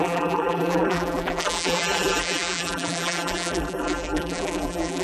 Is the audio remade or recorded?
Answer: remade